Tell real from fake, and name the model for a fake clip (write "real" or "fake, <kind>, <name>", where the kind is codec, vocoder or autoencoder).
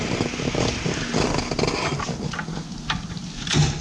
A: real